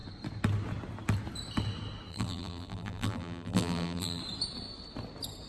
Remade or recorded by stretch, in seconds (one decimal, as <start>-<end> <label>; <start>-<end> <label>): 0.0-2.1 recorded; 2.1-4.2 remade; 4.2-5.5 recorded

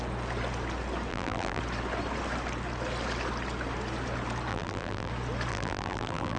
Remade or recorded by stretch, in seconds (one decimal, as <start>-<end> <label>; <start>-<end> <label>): 0.0-1.1 recorded; 1.1-1.6 remade; 1.6-4.5 recorded; 4.5-5.1 remade; 5.1-5.5 recorded; 5.5-6.4 remade

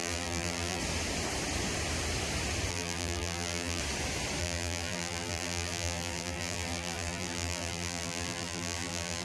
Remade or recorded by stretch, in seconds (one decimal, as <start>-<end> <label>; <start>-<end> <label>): 0.0-0.8 remade; 0.8-2.7 recorded; 2.7-3.8 remade; 3.8-4.4 recorded; 4.4-9.2 remade

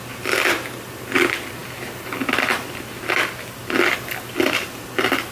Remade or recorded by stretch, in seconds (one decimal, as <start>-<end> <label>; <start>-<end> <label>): 0.0-5.3 recorded

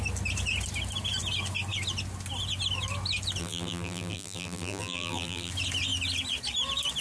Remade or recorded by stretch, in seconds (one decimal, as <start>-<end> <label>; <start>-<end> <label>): 0.0-3.4 recorded; 3.4-5.5 remade; 5.5-7.0 recorded

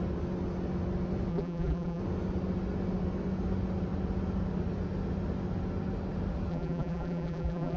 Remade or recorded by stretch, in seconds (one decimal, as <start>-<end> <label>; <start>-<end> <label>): 0.0-1.3 recorded; 1.3-2.0 remade; 2.0-6.5 recorded; 6.5-7.8 remade